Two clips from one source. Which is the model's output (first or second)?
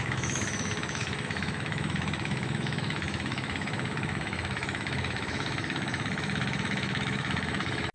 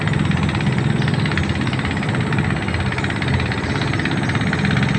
first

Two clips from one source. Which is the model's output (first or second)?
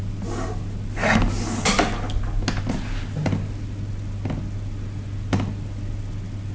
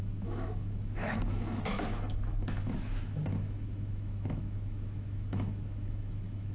second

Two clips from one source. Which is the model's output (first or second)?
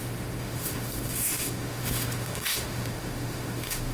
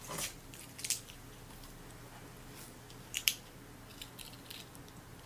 first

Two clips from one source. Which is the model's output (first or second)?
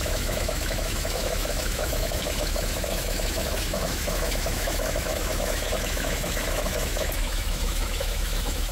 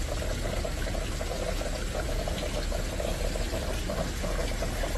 first